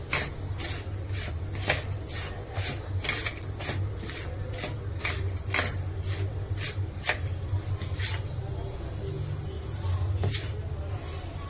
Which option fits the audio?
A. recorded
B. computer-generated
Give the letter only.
A